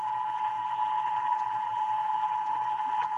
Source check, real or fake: fake